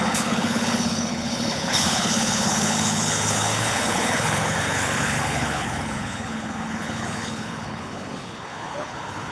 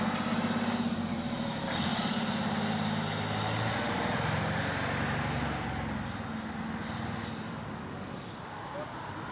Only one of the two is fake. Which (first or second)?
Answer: first